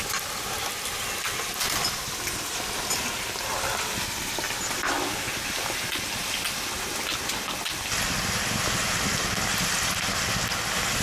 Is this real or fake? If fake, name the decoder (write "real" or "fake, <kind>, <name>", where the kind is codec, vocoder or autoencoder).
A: real